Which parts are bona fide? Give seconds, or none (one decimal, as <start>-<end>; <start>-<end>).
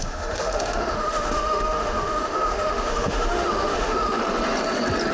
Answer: 4.2-5.1